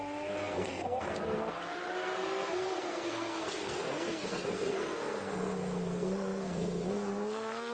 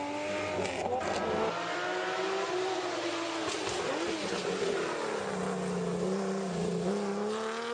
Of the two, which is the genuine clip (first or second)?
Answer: second